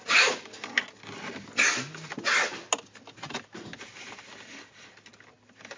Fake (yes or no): no